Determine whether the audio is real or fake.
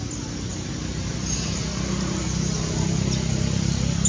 real